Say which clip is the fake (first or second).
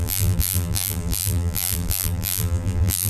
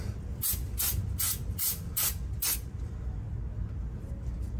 first